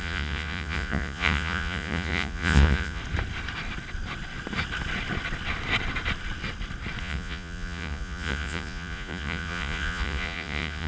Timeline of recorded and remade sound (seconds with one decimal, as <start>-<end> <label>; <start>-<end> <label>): 0.0-3.0 remade; 3.0-7.0 recorded; 7.0-10.9 remade